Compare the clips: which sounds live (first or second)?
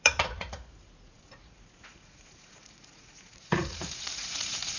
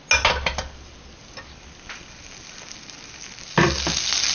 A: second